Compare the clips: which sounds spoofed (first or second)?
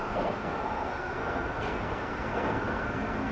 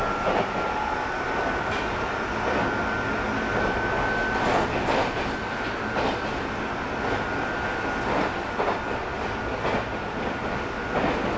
first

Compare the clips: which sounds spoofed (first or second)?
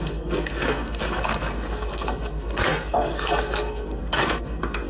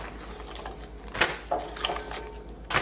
first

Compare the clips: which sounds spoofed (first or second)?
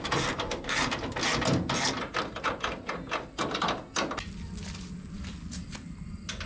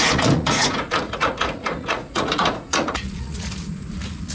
second